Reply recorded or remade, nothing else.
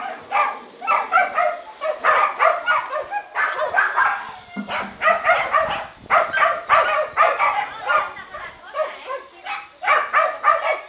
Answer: recorded